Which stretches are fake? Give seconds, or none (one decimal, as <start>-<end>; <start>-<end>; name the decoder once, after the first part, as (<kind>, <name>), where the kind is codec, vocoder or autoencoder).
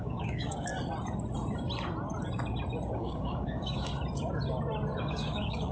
0.0-0.7 (codec, DAC); 2.9-3.9; 5.0-5.7